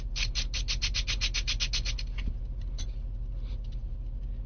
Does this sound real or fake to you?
real